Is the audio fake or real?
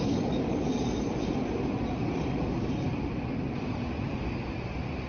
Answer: real